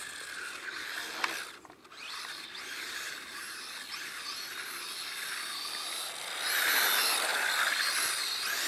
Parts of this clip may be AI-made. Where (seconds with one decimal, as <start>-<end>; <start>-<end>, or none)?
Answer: none